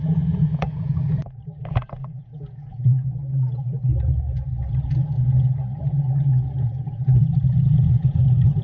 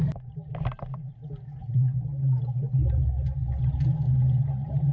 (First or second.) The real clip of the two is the second